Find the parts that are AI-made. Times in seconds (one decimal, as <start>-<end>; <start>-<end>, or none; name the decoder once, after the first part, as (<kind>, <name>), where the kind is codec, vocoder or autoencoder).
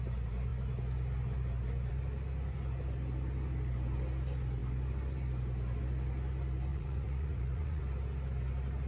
6.7-7.8 (vocoder, Vocos)